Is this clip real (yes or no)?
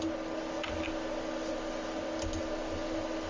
yes